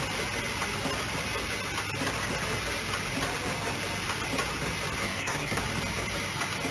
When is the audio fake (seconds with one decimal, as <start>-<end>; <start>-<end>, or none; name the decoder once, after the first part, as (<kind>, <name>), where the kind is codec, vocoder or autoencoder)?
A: 5.0-5.6 (codec, SNAC)